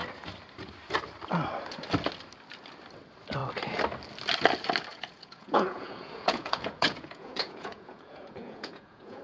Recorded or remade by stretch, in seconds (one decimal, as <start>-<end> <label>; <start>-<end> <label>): 0.0-4.9 recorded; 4.9-9.2 remade